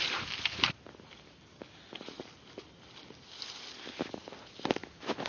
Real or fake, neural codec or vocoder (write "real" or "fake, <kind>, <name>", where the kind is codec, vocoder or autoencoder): real